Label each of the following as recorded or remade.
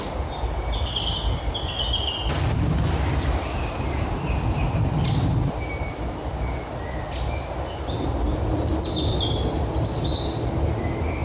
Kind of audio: recorded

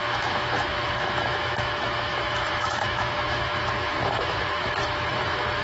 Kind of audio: remade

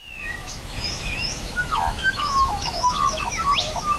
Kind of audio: remade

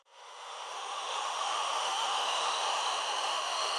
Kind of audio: remade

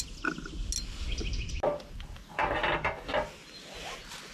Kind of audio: recorded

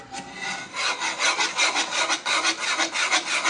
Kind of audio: recorded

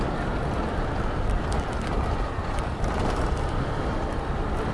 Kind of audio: recorded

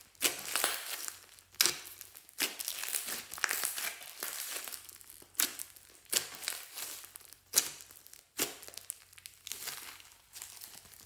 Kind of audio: recorded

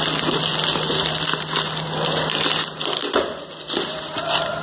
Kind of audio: recorded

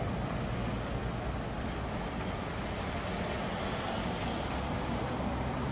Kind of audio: recorded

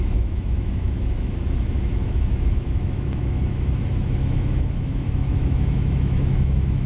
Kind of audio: remade